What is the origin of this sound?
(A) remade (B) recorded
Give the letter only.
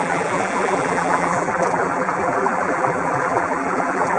A